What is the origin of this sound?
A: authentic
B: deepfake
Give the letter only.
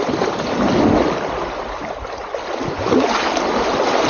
A